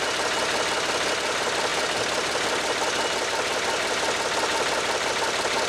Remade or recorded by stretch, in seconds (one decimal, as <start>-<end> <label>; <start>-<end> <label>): 0.0-5.7 recorded